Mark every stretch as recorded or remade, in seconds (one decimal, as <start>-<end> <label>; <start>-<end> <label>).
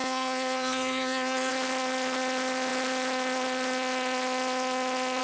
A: 0.0-1.5 remade; 1.5-5.2 recorded